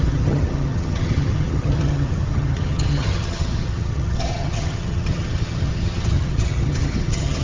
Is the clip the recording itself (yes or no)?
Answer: no